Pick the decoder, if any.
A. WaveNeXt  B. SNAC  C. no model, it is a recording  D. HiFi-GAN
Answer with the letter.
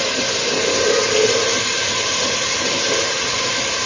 C